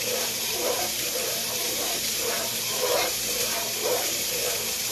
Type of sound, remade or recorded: remade